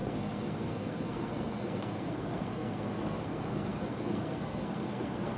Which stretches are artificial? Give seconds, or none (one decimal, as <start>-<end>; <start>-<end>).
0.0-5.4